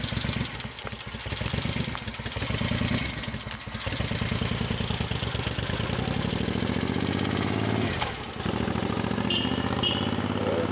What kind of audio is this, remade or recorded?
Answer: recorded